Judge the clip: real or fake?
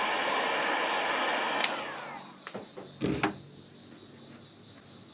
real